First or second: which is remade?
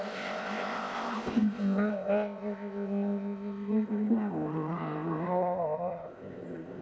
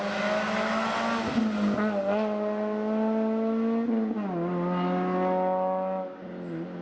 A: first